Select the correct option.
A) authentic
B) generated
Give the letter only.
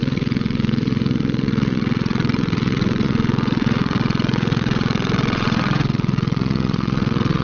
B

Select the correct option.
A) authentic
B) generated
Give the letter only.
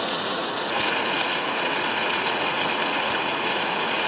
B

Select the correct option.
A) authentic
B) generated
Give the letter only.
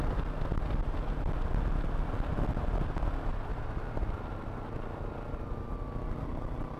A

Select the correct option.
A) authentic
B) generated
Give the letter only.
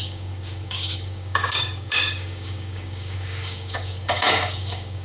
B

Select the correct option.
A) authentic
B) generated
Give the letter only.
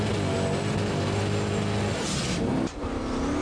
A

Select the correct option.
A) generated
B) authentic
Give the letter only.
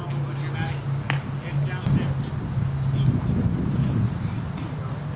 B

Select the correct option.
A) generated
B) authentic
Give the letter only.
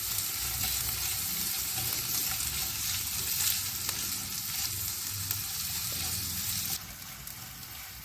B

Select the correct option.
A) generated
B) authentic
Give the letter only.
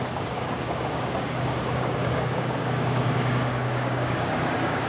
A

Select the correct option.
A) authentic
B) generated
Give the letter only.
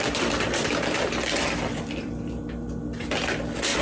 B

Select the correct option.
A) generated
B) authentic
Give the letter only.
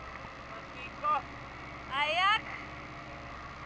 B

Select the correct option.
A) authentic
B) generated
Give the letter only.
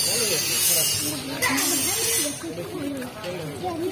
A